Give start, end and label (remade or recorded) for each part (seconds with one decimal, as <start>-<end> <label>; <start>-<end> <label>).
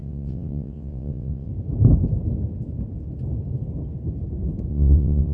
0.0-1.5 remade; 1.5-4.7 recorded; 4.7-5.3 remade